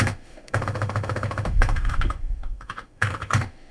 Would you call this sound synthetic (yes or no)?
yes